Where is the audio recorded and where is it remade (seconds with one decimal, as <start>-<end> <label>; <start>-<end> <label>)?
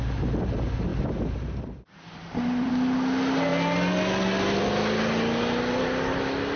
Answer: 0.0-0.9 recorded; 0.9-2.7 remade; 2.7-6.6 recorded